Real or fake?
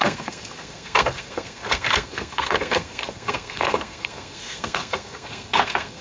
fake